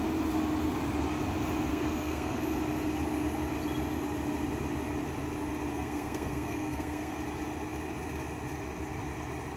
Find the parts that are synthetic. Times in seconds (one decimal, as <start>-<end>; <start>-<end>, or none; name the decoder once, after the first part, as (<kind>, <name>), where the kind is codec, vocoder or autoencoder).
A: 1.7-2.4 (codec, SNAC); 5.7-7.2